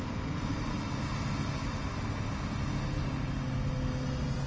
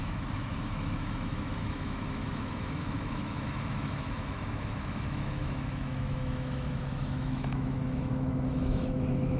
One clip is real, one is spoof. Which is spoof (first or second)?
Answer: second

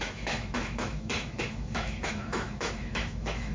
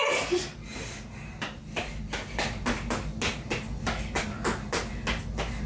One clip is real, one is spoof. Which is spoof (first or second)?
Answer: first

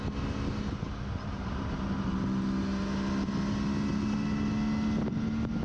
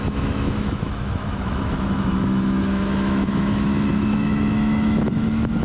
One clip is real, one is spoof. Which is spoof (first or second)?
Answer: second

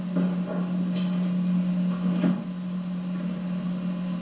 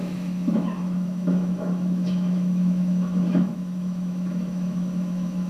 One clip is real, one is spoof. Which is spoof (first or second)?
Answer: second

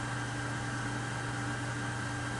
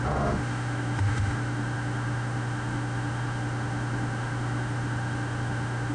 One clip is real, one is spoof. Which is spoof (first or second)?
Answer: second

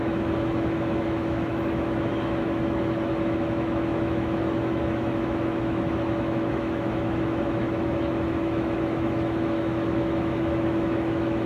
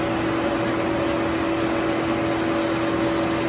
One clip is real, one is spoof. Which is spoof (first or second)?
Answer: first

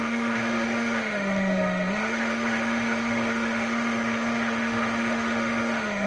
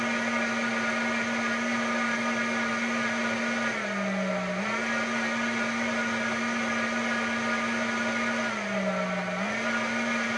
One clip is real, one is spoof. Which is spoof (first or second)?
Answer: first